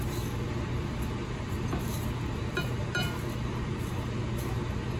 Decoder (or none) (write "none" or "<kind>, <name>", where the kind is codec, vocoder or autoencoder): none